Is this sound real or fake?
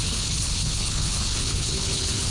fake